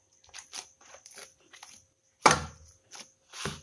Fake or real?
real